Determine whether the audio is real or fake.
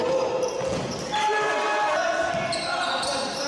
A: real